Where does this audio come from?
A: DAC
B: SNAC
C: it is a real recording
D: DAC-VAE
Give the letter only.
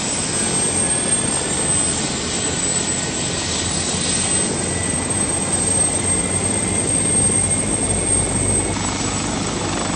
C